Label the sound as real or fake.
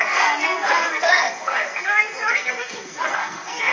fake